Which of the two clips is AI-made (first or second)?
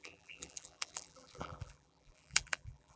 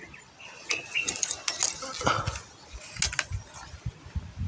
first